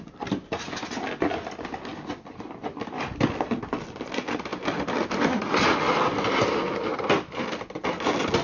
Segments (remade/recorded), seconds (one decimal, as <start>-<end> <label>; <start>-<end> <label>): 0.0-8.4 recorded